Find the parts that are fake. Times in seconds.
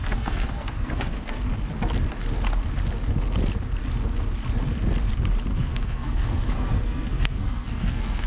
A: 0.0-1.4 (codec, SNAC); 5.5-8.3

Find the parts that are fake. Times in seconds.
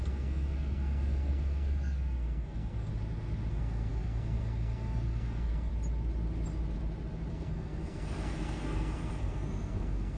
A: 0.0-2.9 (codec, SNAC); 3.5-5.7; 7.3-10.2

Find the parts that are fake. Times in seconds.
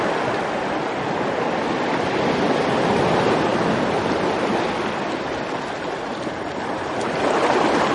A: none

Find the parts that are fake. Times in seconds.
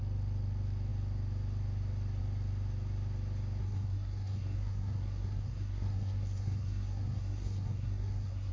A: 3.6-8.5 (codec, SNAC)